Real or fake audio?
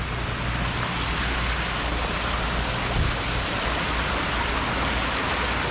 real